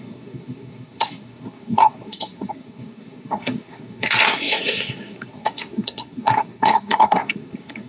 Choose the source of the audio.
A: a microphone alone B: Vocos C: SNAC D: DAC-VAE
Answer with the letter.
C